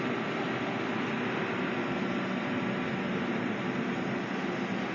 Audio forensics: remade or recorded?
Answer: recorded